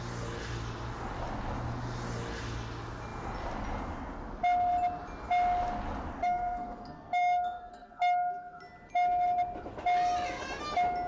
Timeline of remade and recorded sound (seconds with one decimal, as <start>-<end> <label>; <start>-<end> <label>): 0.0-6.2 recorded; 6.2-8.0 remade; 8.0-11.1 recorded